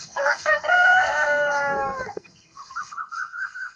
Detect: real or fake fake